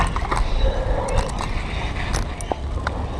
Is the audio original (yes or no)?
yes